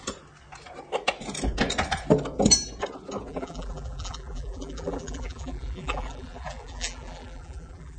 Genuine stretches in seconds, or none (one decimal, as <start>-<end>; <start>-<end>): 0.0-3.3